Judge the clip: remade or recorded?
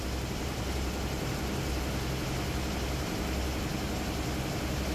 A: recorded